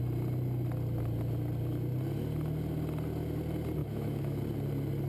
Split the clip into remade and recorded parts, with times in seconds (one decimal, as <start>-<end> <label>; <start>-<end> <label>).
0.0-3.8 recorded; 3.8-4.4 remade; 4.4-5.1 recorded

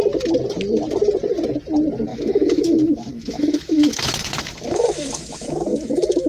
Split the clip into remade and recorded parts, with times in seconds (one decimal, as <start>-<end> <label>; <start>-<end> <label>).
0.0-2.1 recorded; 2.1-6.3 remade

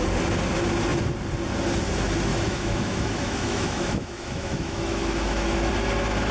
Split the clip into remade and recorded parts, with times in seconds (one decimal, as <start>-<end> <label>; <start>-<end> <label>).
0.0-2.3 recorded; 2.3-5.7 remade; 5.7-6.3 recorded

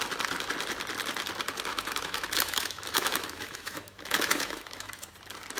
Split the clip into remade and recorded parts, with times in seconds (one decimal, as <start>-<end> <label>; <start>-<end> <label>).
0.0-1.7 recorded; 1.7-5.1 remade; 5.1-5.6 recorded

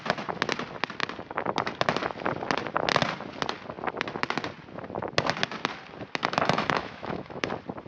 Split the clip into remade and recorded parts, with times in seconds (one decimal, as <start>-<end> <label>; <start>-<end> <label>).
0.0-6.2 recorded; 6.2-7.5 remade; 7.5-7.9 recorded